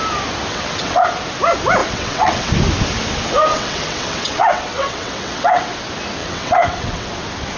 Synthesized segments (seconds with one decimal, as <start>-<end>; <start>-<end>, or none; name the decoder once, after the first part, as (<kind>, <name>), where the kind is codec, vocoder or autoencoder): 0.5-1.0 (vocoder, WaveNeXt); 1.8-2.5; 3.5-5.8; 6.2-7.1